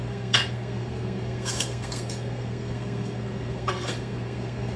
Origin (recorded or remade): remade